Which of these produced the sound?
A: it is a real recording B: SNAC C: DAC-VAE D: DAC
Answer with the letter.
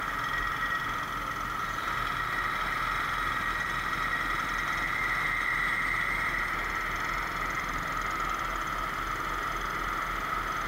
A